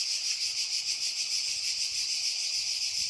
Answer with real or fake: real